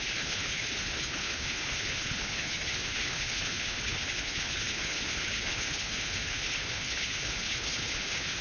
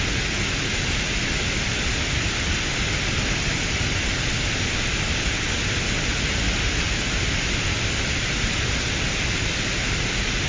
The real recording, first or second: second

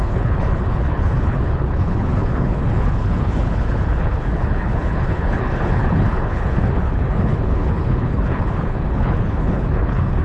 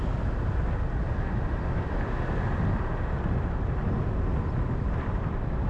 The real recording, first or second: second